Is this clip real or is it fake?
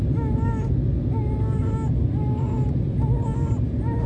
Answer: real